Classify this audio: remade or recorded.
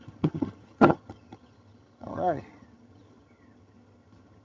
remade